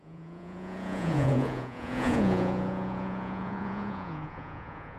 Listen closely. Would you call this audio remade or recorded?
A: remade